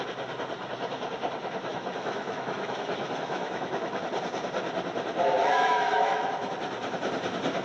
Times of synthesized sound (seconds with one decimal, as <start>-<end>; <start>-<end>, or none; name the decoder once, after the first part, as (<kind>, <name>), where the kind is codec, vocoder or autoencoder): 1.7-4.0 (autoencoder, DAC-VAE); 5.4-6.5